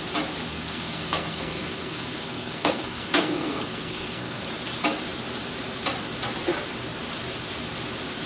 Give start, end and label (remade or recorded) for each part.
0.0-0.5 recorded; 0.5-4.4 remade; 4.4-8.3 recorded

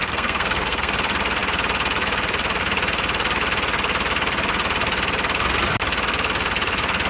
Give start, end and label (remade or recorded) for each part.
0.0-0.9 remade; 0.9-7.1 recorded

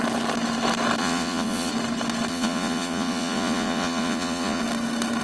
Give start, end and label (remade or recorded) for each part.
0.0-1.0 recorded; 1.0-1.7 remade; 1.7-2.3 recorded; 2.3-4.6 remade; 4.6-5.2 recorded